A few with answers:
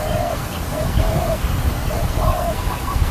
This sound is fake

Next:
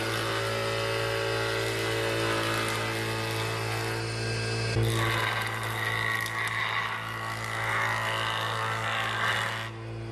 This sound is real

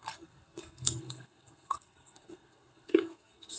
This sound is fake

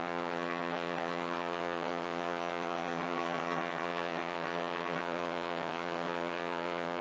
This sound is fake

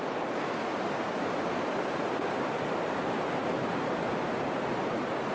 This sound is fake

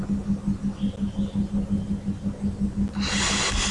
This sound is real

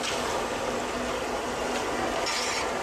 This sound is real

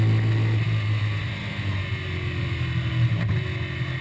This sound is real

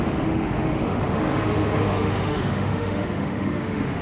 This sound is fake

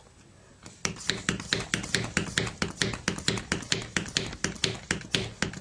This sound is real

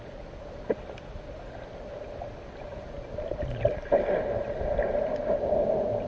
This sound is real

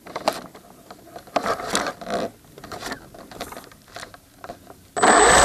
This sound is real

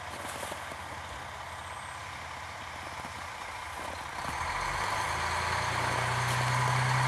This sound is real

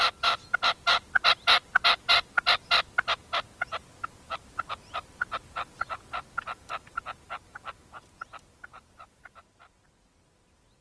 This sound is real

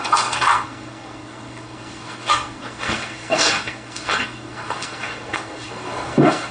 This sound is fake